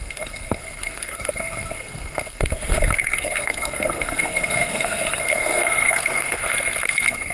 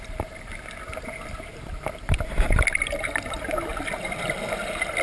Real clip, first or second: second